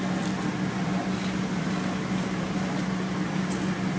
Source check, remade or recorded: recorded